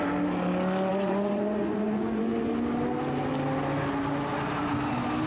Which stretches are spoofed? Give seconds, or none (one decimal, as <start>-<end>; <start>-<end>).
0.9-2.5